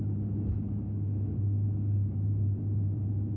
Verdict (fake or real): real